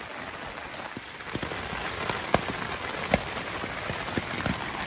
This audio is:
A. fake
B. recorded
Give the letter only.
B